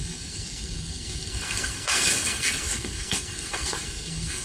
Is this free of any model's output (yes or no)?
no